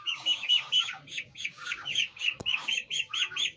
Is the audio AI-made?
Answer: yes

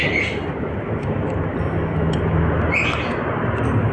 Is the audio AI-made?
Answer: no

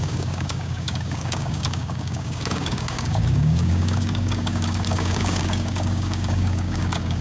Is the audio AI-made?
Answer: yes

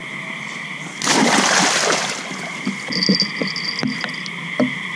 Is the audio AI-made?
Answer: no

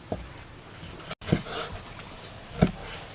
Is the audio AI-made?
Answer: no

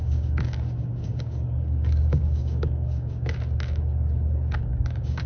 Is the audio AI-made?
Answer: yes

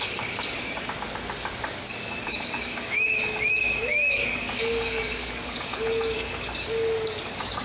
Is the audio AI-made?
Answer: yes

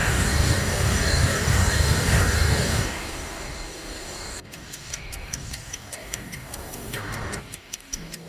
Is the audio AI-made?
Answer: yes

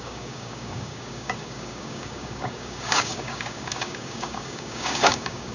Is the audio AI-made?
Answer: yes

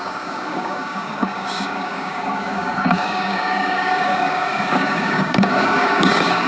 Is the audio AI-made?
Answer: yes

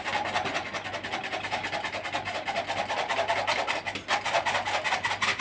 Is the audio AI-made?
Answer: no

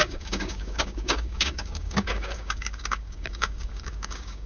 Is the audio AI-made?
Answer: yes